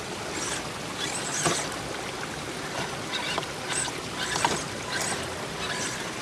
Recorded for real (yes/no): yes